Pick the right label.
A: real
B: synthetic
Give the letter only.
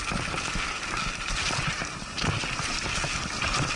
A